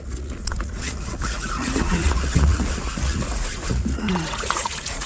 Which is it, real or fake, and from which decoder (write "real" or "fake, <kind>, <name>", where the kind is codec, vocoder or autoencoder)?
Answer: fake, vocoder, Vocos